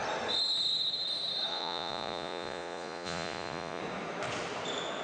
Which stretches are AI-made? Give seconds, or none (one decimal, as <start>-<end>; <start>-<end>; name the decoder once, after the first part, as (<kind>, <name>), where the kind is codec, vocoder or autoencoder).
1.5-3.8 (vocoder, Vocos)

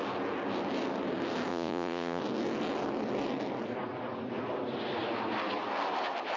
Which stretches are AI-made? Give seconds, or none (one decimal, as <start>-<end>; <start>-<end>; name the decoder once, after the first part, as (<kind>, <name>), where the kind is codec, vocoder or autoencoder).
1.5-2.2 (vocoder, Vocos)

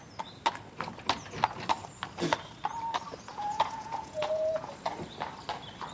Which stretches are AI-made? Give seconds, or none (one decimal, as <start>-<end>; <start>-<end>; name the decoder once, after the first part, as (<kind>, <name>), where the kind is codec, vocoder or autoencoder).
3.3-4.7 (vocoder, Vocos)

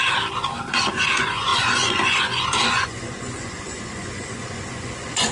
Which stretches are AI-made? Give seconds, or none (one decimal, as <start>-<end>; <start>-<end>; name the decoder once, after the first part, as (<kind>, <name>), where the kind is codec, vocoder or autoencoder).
0.9-5.3 (vocoder, Vocos)